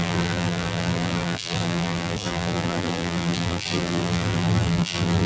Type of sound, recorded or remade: remade